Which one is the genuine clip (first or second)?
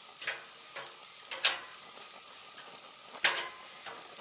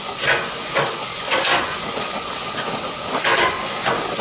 first